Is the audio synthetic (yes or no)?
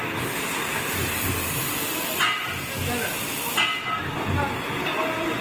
no